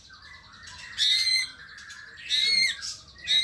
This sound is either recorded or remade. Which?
recorded